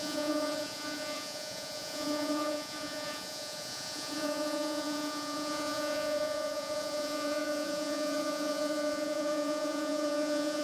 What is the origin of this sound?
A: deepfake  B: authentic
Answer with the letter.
A